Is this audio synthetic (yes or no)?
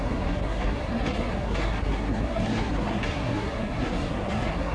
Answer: yes